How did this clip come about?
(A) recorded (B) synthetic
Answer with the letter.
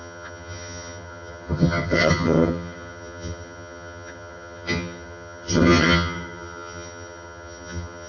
B